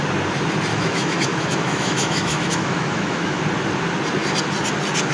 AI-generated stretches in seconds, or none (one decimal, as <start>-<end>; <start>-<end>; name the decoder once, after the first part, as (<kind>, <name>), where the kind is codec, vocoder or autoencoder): 0.7-3.4 (autoencoder, DAC-VAE)